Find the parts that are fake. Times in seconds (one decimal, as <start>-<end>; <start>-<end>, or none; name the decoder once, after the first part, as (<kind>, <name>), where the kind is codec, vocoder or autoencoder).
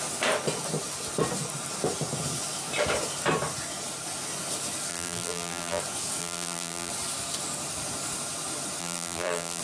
4.9-5.8 (vocoder, BigVGAN v2); 6.2-6.9; 8.8-9.6